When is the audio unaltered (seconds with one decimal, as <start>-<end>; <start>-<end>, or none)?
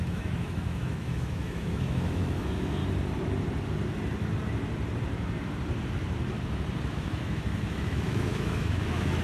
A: 2.8-6.9